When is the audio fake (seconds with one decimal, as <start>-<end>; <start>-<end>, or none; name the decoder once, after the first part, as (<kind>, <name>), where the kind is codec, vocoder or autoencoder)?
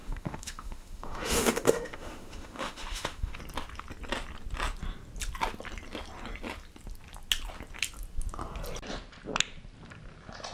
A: 0.0-3.4 (autoencoder, DAC-VAE)